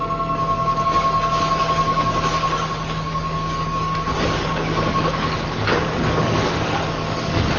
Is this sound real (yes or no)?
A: no